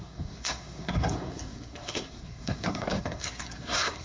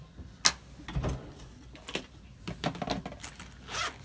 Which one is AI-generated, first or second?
first